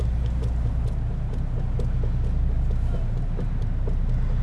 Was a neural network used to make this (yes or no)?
no